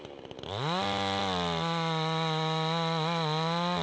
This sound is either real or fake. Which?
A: real